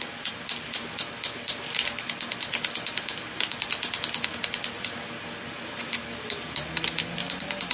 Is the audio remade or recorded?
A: recorded